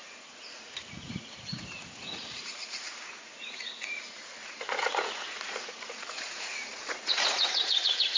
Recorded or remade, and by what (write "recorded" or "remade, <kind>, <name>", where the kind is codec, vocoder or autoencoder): remade, vocoder, Vocos